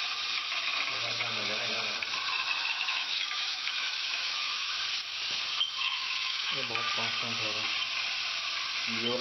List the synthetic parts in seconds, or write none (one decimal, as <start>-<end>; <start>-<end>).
2.6-4.7; 5.8-6.7